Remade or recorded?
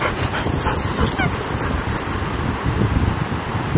recorded